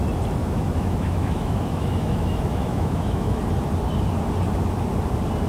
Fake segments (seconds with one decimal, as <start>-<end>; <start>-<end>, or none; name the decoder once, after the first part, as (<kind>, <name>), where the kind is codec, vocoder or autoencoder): 0.4-3.4 (autoencoder, DAC-VAE)